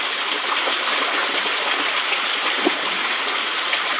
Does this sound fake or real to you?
real